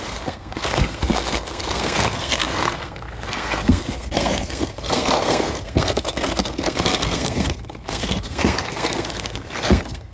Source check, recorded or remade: remade